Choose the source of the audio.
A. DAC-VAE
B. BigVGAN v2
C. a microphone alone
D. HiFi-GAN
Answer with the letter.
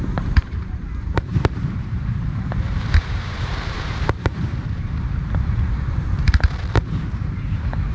B